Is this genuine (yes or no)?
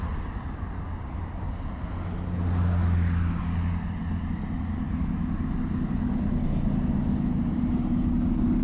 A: yes